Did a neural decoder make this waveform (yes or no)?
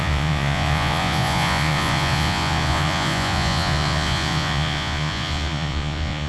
yes